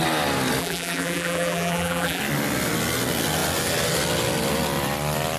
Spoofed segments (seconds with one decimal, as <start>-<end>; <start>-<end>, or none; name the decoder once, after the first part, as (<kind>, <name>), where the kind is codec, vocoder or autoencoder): 0.6-2.2 (vocoder, BigVGAN v2)

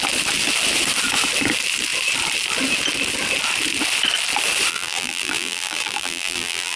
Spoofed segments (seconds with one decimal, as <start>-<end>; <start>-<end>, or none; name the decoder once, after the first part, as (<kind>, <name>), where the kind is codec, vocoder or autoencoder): 4.7-6.8 (vocoder, BigVGAN v2)

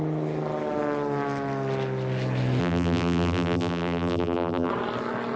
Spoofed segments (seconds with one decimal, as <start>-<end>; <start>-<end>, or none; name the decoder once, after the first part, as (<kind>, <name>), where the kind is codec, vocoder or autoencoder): 2.6-4.7 (vocoder, BigVGAN v2)

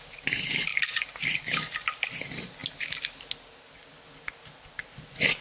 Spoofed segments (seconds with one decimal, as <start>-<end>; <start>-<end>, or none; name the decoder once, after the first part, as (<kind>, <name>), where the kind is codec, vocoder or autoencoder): none

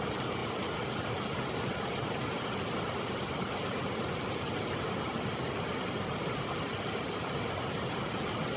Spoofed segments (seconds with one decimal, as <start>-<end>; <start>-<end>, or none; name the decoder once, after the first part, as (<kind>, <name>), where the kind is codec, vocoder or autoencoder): none

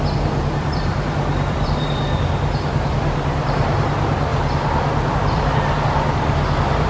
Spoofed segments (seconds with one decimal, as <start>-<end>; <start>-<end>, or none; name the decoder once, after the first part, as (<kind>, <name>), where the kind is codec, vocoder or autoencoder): 0.0-4.3 (vocoder, BigVGAN v2); 5.1-6.9